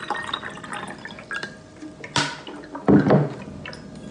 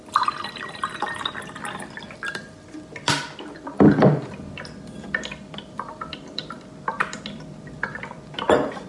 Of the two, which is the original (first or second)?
first